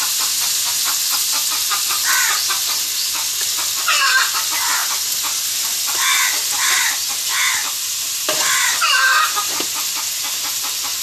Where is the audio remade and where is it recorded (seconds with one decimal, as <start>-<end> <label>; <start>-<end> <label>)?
0.0-4.8 remade; 4.8-7.3 recorded; 7.3-11.0 remade